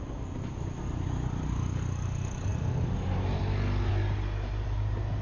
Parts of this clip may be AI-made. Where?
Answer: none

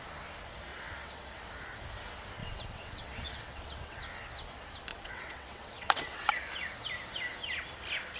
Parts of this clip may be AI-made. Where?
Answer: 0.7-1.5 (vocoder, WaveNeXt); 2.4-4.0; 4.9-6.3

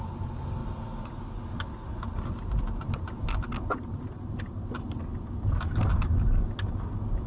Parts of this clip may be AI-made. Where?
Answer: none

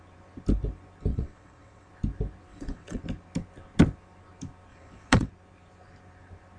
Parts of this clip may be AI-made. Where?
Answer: 1.1-1.9 (vocoder, WaveNeXt); 2.5-3.0; 4.7-5.3